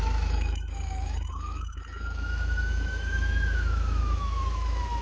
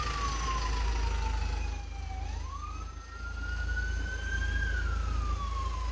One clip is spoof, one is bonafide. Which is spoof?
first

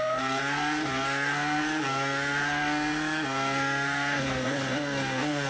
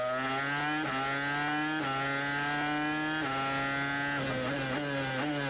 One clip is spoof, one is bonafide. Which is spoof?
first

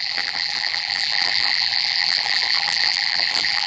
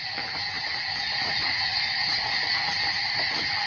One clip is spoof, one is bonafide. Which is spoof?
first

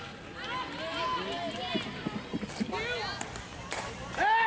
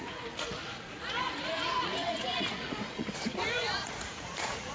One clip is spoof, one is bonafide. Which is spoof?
second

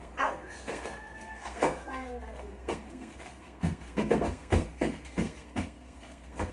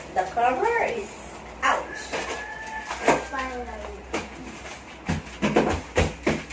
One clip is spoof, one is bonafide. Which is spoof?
first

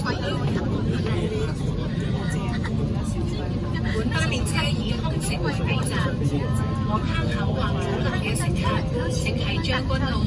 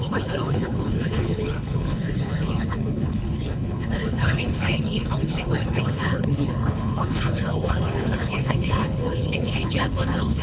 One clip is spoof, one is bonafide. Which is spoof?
second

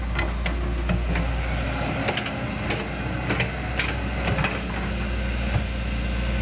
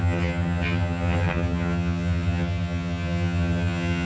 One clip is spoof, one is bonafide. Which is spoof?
second